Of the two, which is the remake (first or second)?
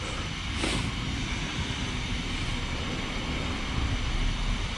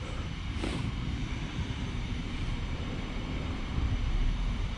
second